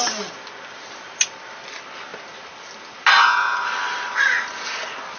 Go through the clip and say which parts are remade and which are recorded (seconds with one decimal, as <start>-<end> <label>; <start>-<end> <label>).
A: 0.0-5.2 recorded